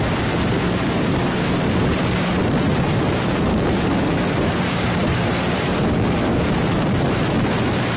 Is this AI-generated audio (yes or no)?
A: yes